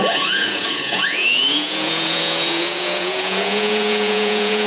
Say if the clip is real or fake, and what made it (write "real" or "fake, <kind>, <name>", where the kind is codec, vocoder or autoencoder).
fake, vocoder, Vocos